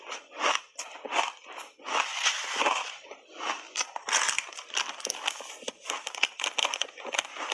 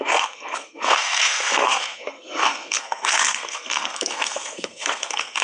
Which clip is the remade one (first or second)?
second